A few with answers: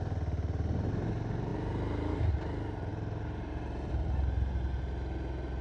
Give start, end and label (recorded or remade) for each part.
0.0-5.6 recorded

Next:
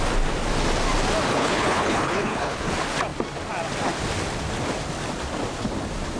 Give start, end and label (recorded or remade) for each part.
0.0-1.3 recorded; 1.3-2.7 remade; 2.7-6.2 recorded

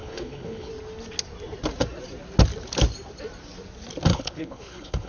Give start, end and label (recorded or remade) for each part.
0.0-0.7 remade; 0.7-4.1 recorded; 4.1-5.1 remade

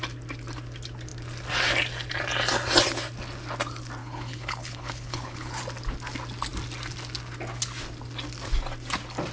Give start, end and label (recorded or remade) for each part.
0.0-4.0 recorded; 4.0-5.6 remade; 5.6-9.3 recorded

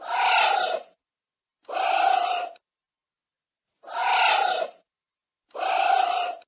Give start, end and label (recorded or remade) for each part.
0.0-6.5 recorded

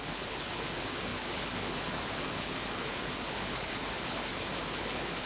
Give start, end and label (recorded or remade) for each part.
0.0-4.3 remade; 4.3-4.8 recorded; 4.8-5.3 remade

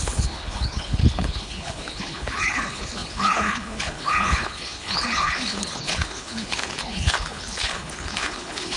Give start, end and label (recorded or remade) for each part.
0.0-8.8 remade